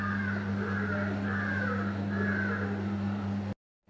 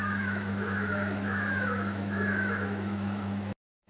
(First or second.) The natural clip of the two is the first